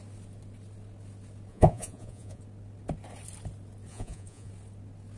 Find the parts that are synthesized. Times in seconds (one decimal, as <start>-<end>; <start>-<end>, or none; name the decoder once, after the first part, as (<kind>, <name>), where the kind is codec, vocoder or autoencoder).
1.5-2.4 (vocoder, Vocos); 3.9-4.5